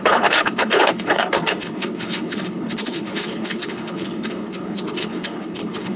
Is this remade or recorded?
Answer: remade